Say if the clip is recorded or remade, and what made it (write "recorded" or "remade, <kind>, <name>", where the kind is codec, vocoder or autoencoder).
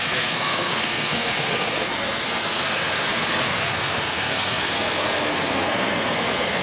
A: remade, codec, SNAC